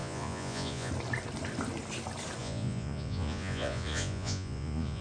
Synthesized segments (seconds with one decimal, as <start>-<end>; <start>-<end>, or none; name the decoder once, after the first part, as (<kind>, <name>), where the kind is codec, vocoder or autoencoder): 0.0-0.9 (vocoder, Vocos); 2.4-5.0